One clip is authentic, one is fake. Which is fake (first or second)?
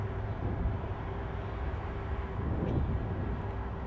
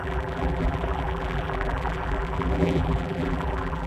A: second